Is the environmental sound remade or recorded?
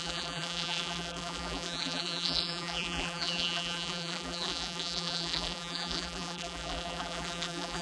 remade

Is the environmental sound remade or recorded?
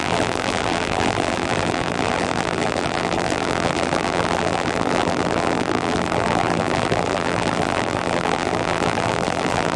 remade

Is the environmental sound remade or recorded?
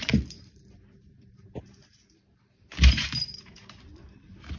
remade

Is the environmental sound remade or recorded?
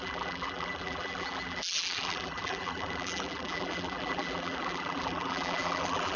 remade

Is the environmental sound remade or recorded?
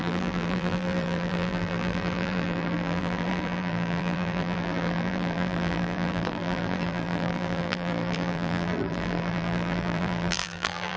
remade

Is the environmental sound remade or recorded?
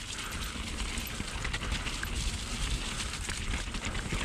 recorded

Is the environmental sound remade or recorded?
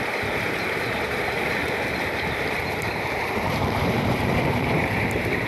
remade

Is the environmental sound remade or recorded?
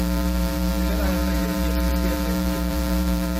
remade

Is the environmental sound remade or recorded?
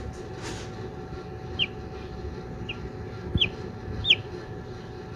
recorded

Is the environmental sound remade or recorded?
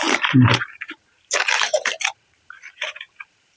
remade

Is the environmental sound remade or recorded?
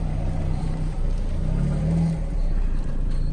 remade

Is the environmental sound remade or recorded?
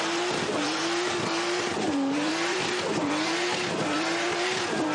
remade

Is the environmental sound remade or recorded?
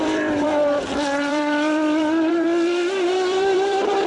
remade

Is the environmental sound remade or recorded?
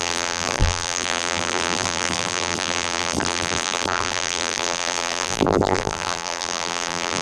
remade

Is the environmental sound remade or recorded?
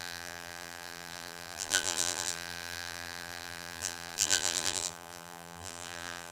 remade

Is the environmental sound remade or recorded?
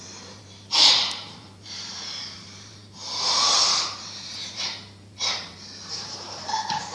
remade